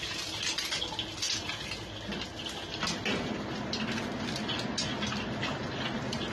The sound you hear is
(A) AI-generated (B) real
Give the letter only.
B